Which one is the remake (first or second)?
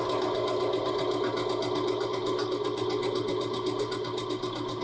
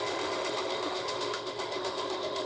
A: second